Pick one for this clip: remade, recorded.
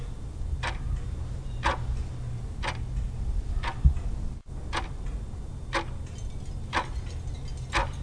recorded